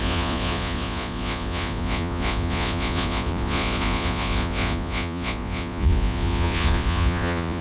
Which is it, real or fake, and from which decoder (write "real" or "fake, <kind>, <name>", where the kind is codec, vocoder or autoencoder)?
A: fake, vocoder, Vocos